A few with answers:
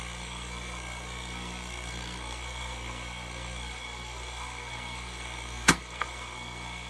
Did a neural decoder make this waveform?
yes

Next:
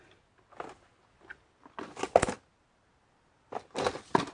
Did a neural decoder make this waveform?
no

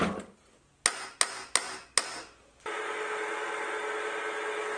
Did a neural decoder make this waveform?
no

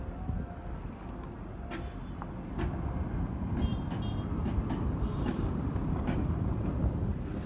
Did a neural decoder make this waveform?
no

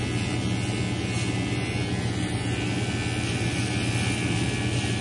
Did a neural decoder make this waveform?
no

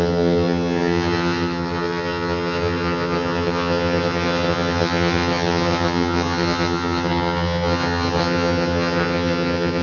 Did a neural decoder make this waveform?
yes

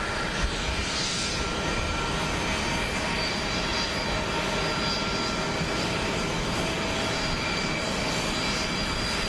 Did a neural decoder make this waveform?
no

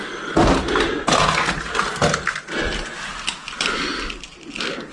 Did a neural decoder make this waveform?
no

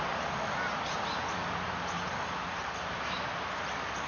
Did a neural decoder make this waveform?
no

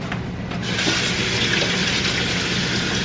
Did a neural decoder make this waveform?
no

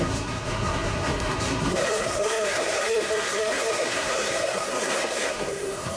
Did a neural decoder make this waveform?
yes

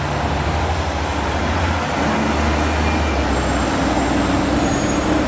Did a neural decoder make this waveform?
no